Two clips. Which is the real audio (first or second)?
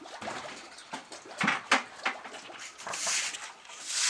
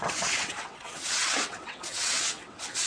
first